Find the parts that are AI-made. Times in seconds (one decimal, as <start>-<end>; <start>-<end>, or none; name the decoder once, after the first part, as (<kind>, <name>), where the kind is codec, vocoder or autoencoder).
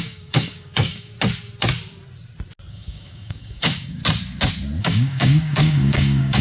0.0-1.1 (codec, DAC); 2.7-4.0; 4.8-6.4